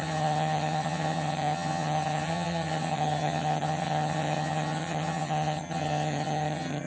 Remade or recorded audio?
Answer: remade